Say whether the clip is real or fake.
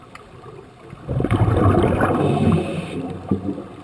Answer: real